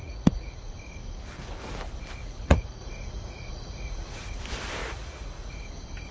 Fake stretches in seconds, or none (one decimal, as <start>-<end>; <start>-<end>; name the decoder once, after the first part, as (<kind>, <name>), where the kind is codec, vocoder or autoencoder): 0.0-0.7 (vocoder, Vocos); 2.2-4.2; 4.8-5.5